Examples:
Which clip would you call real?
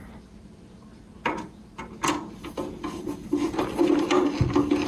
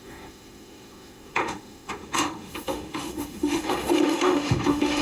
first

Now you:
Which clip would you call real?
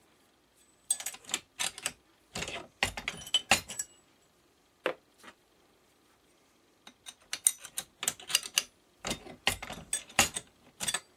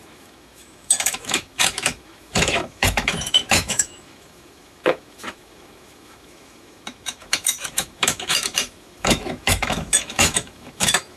first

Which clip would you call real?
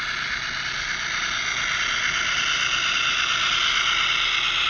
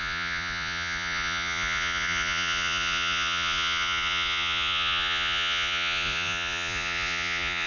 first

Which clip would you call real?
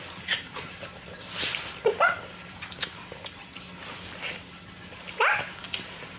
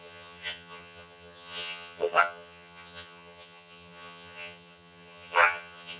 first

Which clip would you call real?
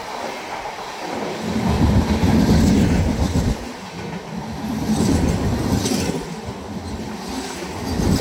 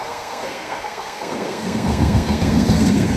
first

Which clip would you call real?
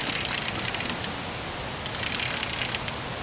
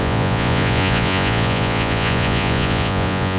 first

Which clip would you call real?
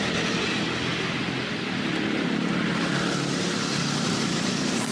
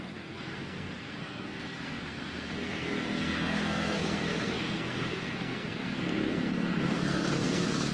first